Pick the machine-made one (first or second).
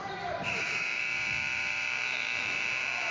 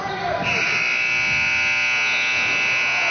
first